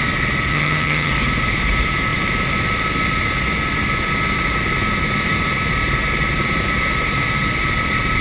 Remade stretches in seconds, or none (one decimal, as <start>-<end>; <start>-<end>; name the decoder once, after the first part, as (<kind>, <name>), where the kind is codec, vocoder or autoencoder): 0.5-1.1 (vocoder, HiFi-GAN)